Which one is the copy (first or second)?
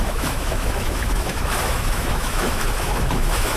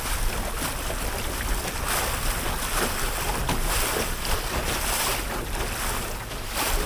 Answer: first